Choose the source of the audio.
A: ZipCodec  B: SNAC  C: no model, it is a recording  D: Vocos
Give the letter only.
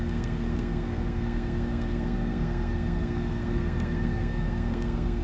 B